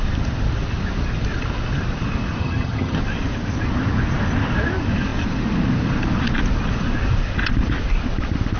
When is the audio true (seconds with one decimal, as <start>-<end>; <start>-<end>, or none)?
0.0-2.4; 3.0-8.6